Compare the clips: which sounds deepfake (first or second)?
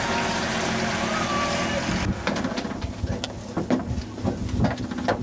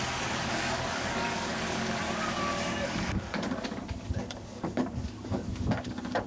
second